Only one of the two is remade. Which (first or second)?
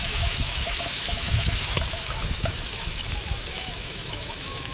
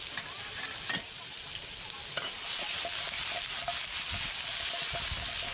first